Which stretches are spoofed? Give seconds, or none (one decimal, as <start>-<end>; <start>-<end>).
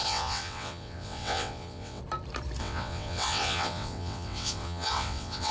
0.0-2.0; 2.6-5.5